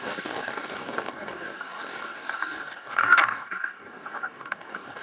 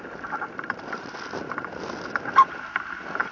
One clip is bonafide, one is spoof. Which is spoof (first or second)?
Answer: first